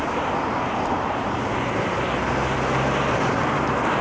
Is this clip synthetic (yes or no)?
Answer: no